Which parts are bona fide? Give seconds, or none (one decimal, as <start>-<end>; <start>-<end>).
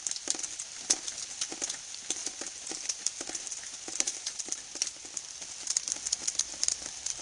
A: 0.0-2.2; 4.5-6.2